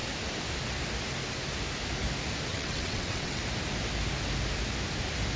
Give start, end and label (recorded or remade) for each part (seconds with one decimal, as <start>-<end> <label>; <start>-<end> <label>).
0.0-2.5 recorded; 2.5-3.4 remade; 3.4-5.4 recorded